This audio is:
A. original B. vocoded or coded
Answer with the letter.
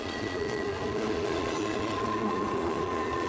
B